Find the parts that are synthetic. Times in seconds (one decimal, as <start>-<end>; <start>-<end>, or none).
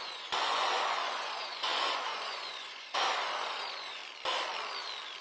0.0-4.0